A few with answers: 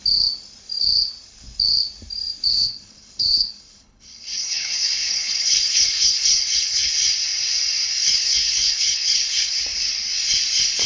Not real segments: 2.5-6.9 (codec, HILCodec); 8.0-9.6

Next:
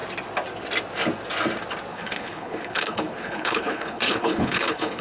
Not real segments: 1.9-5.0 (codec, HILCodec)

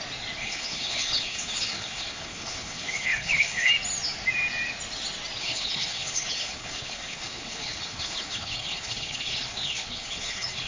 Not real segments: 0.4-3.7 (codec, HILCodec); 5.4-10.7

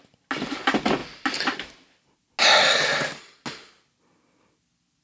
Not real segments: none

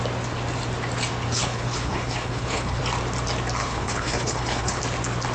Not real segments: 1.3-2.8 (codec, HILCodec); 3.6-4.8

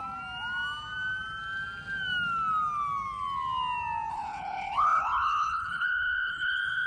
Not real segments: 4.1-6.9 (codec, HILCodec)

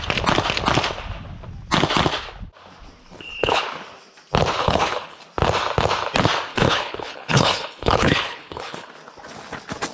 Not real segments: 3.0-3.6 (codec, HILCodec); 4.6-5.2; 6.5-8.9